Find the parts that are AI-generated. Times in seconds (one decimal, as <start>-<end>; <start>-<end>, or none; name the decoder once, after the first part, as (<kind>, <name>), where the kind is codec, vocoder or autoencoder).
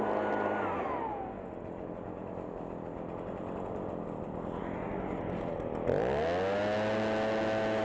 none